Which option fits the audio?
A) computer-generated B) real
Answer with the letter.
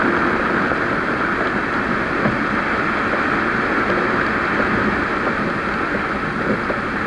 B